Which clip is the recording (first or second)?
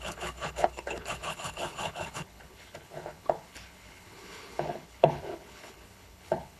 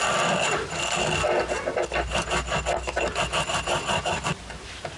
second